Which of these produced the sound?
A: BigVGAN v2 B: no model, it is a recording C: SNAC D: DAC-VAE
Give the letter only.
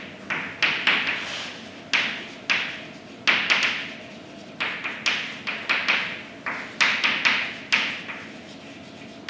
B